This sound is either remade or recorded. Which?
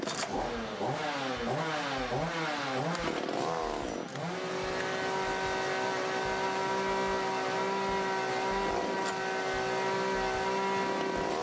recorded